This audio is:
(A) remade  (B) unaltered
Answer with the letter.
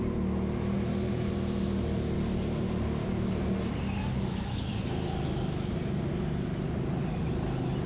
B